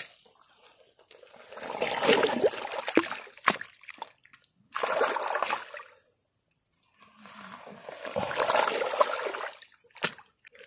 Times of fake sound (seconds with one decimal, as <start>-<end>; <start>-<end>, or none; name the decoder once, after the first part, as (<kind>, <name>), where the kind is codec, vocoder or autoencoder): none